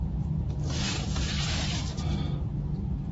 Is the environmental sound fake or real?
fake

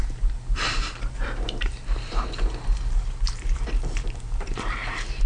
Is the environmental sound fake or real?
fake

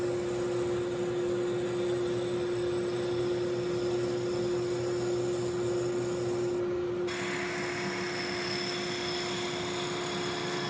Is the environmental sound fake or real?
real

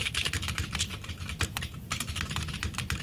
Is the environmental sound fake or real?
real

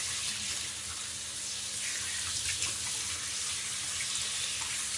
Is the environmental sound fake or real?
real